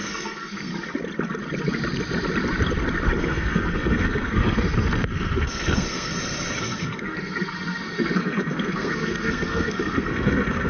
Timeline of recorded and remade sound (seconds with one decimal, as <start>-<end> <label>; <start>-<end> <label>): 0.0-0.7 remade; 0.7-3.2 recorded; 3.2-6.1 remade; 6.1-6.6 recorded; 6.6-10.7 remade